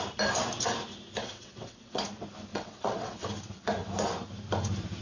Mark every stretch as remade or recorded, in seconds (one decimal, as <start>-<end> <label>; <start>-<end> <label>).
0.0-1.2 recorded; 1.2-2.0 remade; 2.0-2.5 recorded; 2.5-3.3 remade; 3.3-5.0 recorded

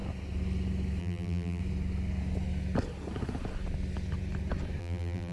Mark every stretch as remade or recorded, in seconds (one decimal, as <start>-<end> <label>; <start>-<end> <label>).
0.0-1.0 recorded; 1.0-1.6 remade; 1.6-4.8 recorded; 4.8-5.3 remade